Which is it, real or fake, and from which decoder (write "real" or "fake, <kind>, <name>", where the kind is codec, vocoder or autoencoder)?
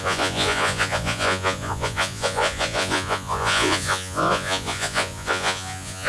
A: fake, vocoder, Vocos